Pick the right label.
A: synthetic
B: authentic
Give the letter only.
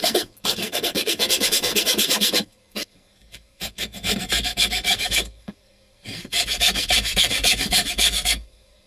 A